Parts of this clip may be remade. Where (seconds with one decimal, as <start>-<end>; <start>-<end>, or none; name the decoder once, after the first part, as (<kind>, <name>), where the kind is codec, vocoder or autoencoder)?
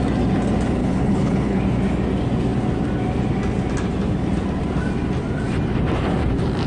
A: 0.8-1.6 (codec, HILCodec)